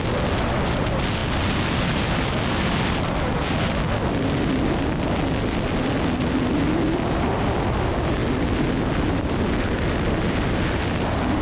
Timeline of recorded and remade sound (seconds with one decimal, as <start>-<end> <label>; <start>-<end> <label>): 0.0-11.4 recorded